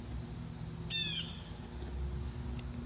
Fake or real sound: real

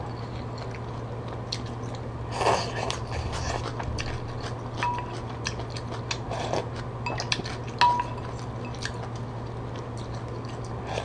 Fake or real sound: real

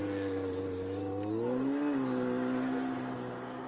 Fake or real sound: real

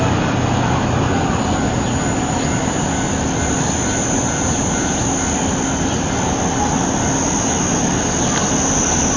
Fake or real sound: real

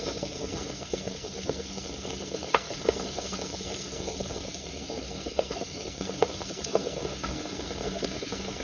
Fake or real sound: fake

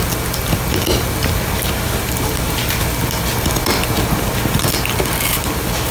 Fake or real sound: real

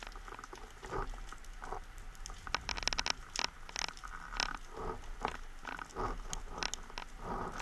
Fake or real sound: real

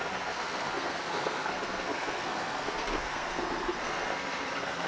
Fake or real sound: fake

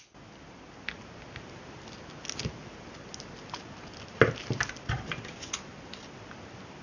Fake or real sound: real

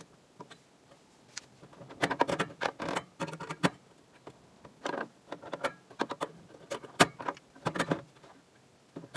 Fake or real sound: real